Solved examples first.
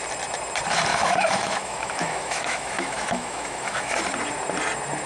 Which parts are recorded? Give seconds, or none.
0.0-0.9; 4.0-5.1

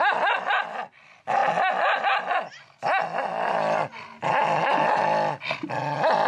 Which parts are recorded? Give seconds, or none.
0.0-6.3

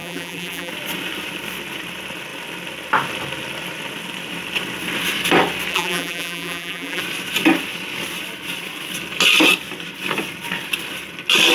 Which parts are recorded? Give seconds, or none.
0.7-5.7; 7.0-11.5

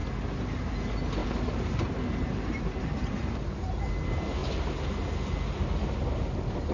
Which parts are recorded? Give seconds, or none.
0.0-1.2; 3.9-6.7

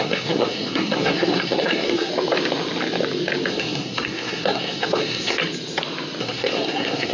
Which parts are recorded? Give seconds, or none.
2.1-3.5; 5.4-6.2

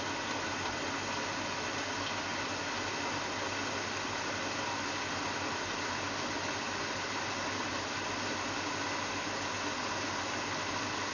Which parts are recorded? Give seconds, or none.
0.0-11.1